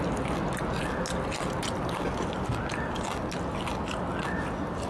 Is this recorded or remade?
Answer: recorded